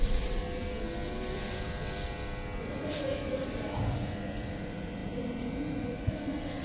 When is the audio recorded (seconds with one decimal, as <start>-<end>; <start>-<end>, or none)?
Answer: 0.4-2.6